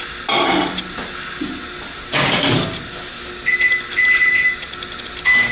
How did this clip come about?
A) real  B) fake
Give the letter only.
A